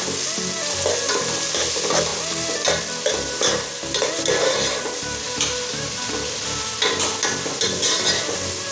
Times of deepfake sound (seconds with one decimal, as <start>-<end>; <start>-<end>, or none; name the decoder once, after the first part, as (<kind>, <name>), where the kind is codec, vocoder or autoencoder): none